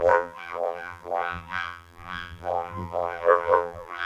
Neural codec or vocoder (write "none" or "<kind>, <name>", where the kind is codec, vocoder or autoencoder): vocoder, BigVGAN v2